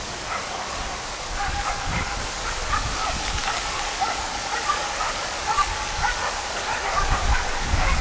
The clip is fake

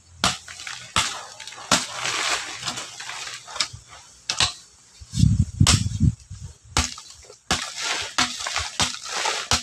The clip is real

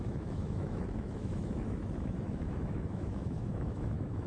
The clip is fake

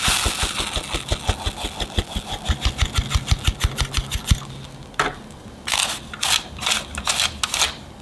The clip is real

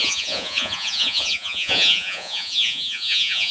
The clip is fake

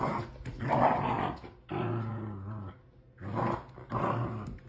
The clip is real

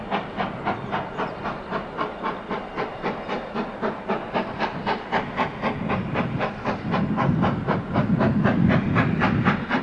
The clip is real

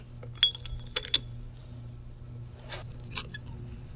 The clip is real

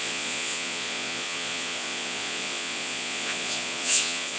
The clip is fake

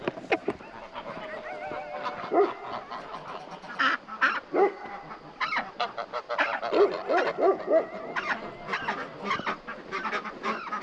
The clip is real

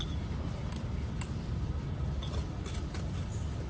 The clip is real